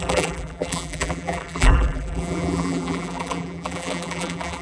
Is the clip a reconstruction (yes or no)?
yes